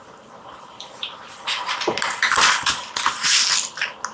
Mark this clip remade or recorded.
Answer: recorded